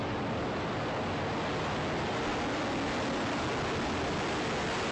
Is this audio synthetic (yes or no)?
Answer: no